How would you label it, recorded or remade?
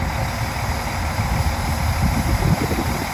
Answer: recorded